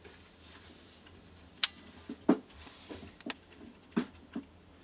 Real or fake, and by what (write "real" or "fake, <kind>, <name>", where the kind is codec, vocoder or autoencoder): real